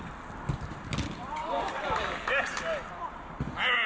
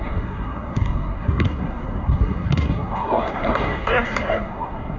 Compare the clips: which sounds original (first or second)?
first